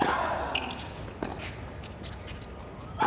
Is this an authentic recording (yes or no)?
yes